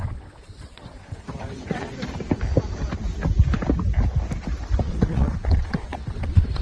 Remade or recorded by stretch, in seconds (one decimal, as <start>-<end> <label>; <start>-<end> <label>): 0.0-1.9 remade; 1.9-4.8 recorded; 4.8-6.6 remade